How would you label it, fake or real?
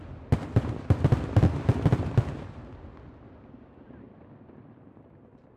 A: real